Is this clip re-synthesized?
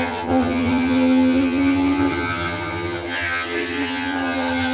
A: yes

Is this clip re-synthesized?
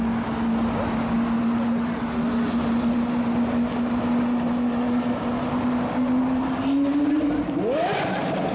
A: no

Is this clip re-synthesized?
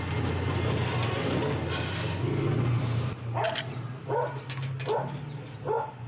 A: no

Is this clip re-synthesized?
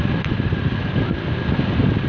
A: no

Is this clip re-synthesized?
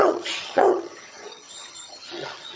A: yes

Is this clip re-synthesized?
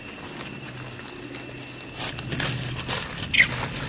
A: no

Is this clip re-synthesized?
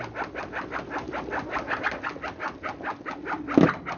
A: no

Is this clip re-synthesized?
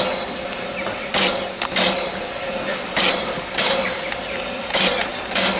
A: no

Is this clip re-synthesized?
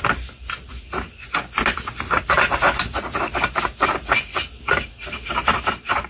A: no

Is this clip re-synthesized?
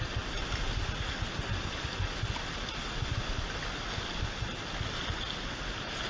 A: no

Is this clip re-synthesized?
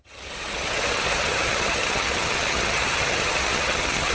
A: yes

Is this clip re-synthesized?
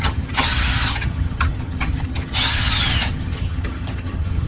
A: yes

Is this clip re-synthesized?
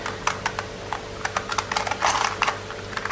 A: no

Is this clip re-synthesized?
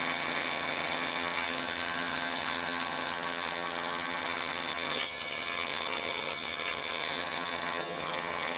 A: yes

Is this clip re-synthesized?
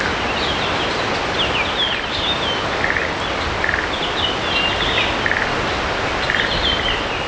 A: no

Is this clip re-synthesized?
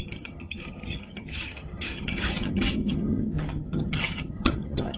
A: yes